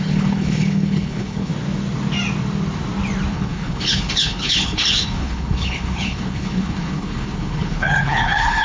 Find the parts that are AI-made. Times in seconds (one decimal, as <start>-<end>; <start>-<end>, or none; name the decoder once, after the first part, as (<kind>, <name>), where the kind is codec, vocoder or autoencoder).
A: 0.0-1.5 (codec, HILCodec); 3.3-8.6